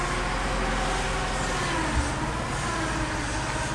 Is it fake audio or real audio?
real